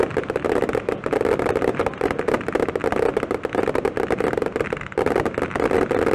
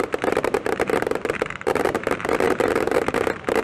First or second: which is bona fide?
first